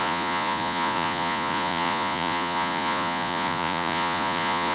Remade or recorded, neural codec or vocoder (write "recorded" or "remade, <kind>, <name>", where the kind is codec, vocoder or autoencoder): remade, vocoder, Vocos